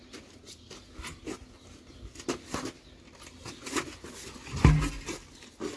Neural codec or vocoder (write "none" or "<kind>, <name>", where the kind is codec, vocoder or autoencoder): none